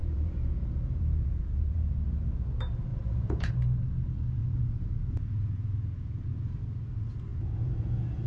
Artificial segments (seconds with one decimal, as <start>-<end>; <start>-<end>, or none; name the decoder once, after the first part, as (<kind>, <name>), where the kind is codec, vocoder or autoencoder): 0.0-2.5 (vocoder, Vocos); 2.9-3.5; 4.4-6.3; 7.3-8.3